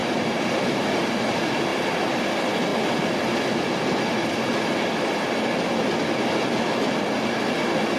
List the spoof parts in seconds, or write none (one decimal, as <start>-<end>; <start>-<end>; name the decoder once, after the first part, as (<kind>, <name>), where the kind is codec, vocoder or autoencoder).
1.7-2.3 (vocoder, BigVGAN v2)